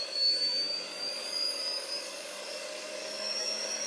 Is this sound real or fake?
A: fake